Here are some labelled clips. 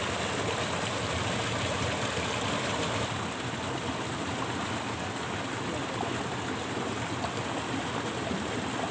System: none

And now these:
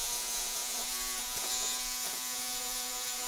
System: vocoder, Vocos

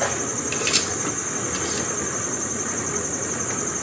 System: none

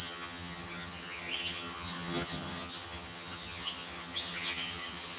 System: vocoder, HiFi-GAN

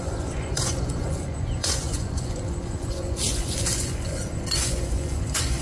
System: vocoder, Vocos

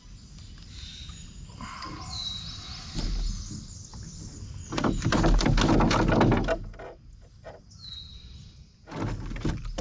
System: none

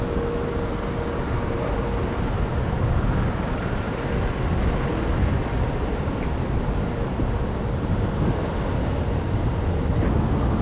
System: none